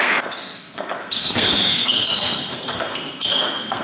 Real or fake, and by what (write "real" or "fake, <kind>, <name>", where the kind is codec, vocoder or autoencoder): fake, codec, SNAC